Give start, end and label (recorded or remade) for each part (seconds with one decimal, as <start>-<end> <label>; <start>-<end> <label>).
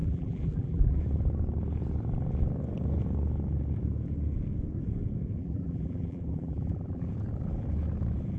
0.0-1.0 remade; 1.0-5.4 recorded; 5.4-7.1 remade; 7.1-8.4 recorded